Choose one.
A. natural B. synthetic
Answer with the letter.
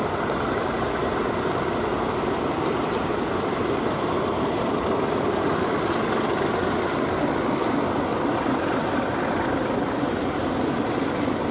A